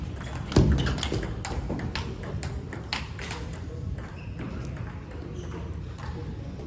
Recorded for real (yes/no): yes